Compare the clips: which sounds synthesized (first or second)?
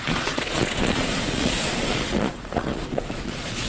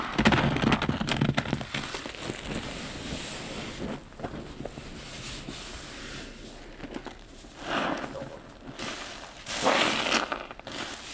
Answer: first